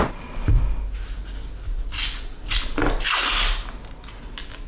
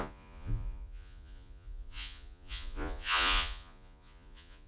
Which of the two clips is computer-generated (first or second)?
second